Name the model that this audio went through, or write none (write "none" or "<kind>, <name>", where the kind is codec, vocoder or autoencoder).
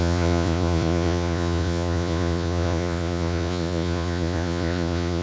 vocoder, Vocos